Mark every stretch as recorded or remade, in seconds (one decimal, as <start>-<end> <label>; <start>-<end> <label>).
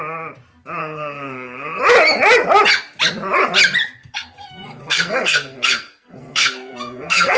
0.0-0.8 recorded; 0.8-1.8 remade; 1.8-4.0 recorded; 4.0-7.4 remade